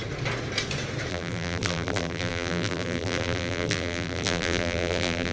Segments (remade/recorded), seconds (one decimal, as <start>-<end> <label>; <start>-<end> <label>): 0.0-1.1 recorded; 1.1-5.3 remade

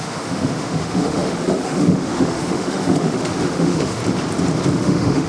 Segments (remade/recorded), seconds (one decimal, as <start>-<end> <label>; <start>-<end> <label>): 0.0-4.0 remade; 4.0-4.7 recorded; 4.7-5.3 remade

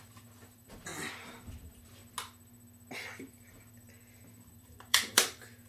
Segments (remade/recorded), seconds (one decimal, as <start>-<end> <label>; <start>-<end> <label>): 0.0-0.9 remade; 0.9-1.5 recorded; 1.5-2.0 remade; 2.0-4.5 recorded; 4.5-5.7 remade

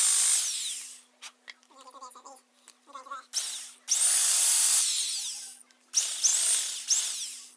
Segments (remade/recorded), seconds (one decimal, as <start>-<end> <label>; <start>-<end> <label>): 0.0-7.6 recorded

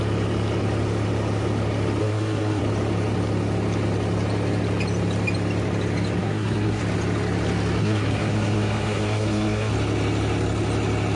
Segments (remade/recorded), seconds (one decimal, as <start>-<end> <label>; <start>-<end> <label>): 0.0-2.0 recorded; 2.0-2.6 remade; 2.6-6.2 recorded; 6.2-6.8 remade; 6.8-7.8 recorded; 7.8-9.7 remade; 9.7-11.2 recorded